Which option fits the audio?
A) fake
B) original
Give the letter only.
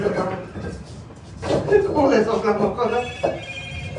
B